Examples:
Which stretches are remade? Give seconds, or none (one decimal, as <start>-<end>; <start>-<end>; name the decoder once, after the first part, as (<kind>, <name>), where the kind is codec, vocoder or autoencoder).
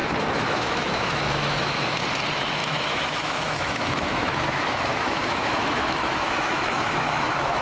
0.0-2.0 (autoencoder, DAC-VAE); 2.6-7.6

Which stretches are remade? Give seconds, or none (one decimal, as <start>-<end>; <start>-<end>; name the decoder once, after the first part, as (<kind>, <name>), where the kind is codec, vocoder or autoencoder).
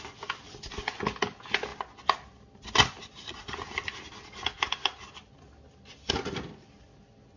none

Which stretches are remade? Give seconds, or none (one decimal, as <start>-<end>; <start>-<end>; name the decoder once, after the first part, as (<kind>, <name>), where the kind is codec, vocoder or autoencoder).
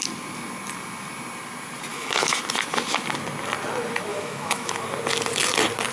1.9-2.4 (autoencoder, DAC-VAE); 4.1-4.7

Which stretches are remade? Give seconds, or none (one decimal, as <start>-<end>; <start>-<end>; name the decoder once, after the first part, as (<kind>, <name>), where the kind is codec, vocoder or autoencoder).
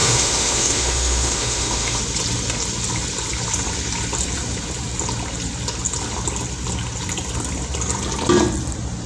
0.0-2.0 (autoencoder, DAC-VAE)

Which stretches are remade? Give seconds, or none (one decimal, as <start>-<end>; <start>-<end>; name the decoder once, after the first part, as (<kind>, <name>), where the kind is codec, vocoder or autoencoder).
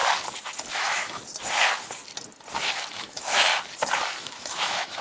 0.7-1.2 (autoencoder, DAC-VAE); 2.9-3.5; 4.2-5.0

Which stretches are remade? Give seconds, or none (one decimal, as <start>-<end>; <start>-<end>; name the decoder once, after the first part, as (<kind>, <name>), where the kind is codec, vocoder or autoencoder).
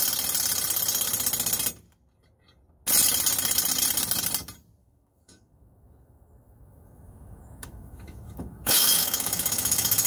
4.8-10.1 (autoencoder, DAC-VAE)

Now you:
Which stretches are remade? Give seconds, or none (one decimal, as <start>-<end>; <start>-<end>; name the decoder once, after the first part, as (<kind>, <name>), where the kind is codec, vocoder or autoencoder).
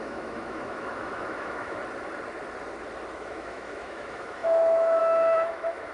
0.0-1.8 (autoencoder, DAC-VAE); 3.1-5.9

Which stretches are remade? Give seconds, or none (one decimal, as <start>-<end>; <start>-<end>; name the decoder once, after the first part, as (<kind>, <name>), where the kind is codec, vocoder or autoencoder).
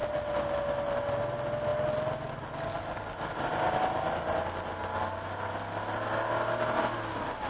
none